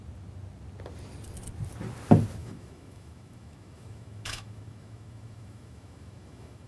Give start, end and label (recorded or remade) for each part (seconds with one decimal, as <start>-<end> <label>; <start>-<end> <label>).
0.0-2.4 recorded; 2.4-6.7 remade